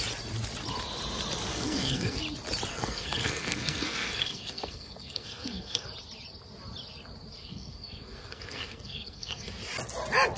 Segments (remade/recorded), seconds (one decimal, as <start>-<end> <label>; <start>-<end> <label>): 0.0-1.5 recorded; 1.5-2.2 remade; 2.2-2.7 recorded; 2.7-5.9 remade; 5.9-7.4 recorded; 7.4-9.5 remade; 9.5-10.4 recorded